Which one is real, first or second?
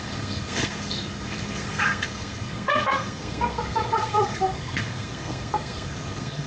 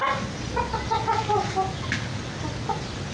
second